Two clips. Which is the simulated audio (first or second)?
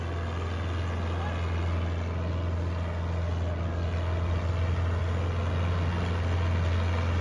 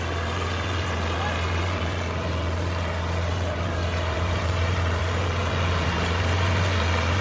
second